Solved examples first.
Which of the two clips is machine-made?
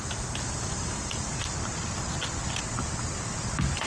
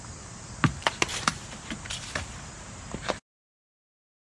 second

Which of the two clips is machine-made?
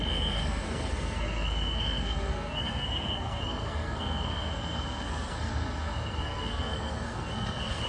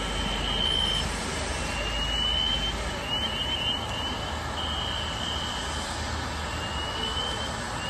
first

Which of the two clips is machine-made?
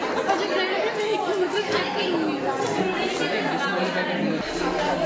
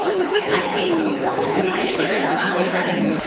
second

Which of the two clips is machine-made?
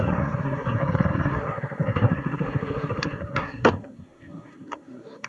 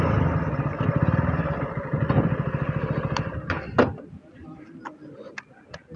first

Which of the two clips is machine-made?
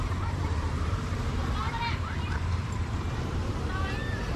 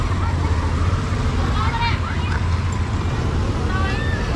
first